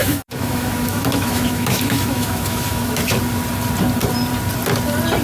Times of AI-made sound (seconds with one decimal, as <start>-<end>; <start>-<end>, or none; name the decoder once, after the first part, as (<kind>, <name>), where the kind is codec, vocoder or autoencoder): 0.0-3.1 (autoencoder, DAC-VAE)